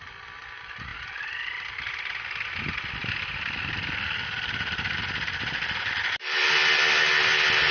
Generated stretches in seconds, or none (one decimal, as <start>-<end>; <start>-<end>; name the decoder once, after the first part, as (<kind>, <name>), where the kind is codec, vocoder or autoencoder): none